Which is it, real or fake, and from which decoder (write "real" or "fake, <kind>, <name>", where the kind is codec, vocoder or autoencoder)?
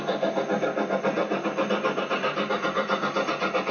real